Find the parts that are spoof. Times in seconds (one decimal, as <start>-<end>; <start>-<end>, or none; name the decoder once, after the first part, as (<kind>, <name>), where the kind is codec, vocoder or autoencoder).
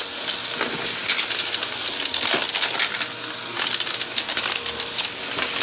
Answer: none